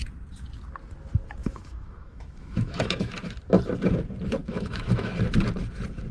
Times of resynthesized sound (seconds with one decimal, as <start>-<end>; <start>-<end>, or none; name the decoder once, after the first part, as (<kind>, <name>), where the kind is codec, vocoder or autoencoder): 1.4-3.1 (autoencoder, DAC-VAE); 4.4-5.1